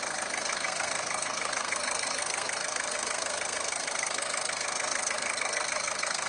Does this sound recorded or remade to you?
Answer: remade